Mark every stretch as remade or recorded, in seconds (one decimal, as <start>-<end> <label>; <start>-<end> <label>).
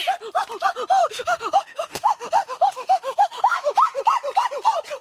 0.0-1.0 recorded; 1.0-4.0 remade; 4.0-5.0 recorded